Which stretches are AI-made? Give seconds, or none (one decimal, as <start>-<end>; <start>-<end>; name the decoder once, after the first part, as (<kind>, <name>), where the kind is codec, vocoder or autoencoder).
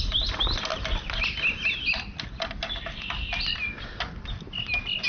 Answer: none